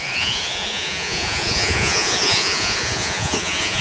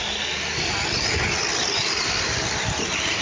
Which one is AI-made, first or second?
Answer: first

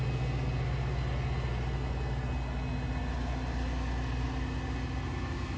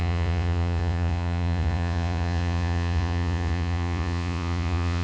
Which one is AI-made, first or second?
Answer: second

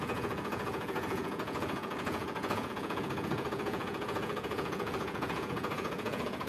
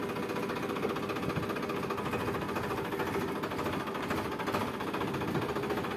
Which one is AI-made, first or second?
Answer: first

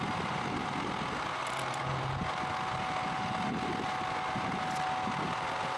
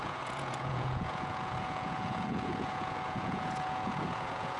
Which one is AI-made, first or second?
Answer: second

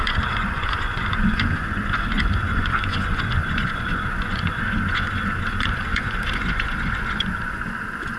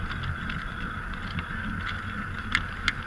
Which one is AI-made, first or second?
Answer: first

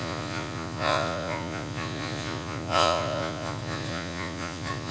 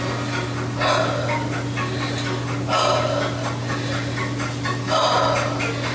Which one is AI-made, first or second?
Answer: first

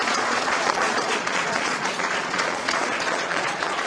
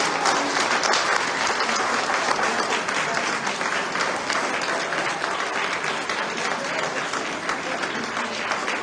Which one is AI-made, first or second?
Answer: first